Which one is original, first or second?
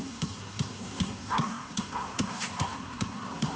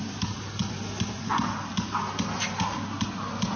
second